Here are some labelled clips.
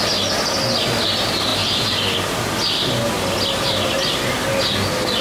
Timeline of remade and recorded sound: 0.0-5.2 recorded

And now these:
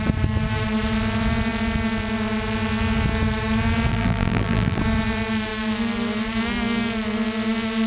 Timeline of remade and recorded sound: 0.0-3.9 recorded; 3.9-4.8 remade; 4.8-7.9 recorded